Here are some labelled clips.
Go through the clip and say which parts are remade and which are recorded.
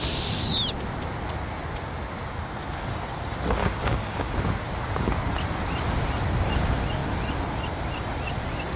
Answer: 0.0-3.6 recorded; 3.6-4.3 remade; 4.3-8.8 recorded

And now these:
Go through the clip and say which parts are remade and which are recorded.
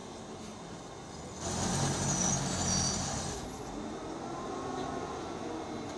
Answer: 0.0-6.0 recorded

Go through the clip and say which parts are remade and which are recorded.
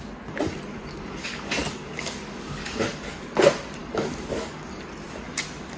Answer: 0.0-1.2 recorded; 1.2-3.2 remade; 3.2-3.8 recorded; 3.8-4.8 remade; 4.8-5.8 recorded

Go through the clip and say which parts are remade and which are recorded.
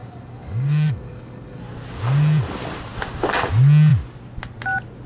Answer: 0.0-1.6 remade; 1.6-5.1 recorded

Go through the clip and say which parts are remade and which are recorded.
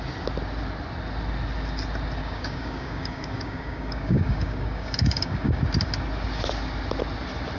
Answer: 0.0-2.2 recorded; 2.2-5.6 remade; 5.6-7.6 recorded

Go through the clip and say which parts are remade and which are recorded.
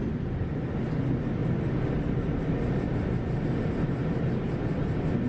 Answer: 0.0-5.3 recorded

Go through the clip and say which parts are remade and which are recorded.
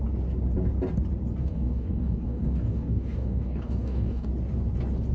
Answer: 0.0-1.4 recorded; 1.4-4.3 remade; 4.3-5.1 recorded